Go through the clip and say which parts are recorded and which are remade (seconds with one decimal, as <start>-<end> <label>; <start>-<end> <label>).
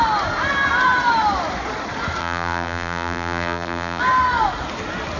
0.0-2.2 recorded; 2.2-4.0 remade; 4.0-5.2 recorded